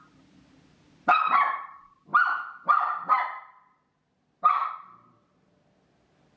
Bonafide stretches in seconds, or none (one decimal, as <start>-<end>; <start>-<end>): 0.0-6.4

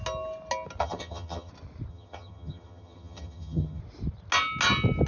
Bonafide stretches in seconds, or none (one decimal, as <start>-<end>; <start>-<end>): 0.0-0.8; 1.5-1.9; 3.8-5.1

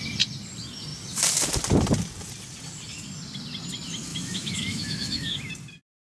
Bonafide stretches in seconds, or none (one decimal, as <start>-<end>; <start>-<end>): 0.0-4.1; 5.5-6.1

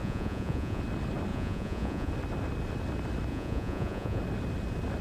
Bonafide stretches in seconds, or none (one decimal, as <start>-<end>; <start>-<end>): 0.8-1.3; 2.1-3.3; 4.2-5.0

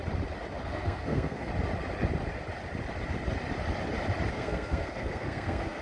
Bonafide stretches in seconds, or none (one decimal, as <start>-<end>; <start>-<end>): 0.0-0.6; 1.5-4.3

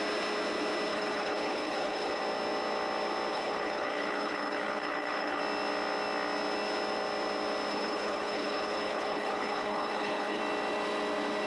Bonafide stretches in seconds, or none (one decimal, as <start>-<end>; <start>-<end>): 0.0-0.9; 2.2-3.3; 5.4-7.7; 10.4-11.5

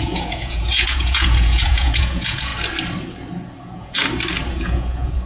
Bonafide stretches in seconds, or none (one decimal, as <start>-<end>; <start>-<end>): 2.5-3.6; 4.0-4.5